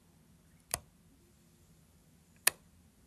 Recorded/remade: recorded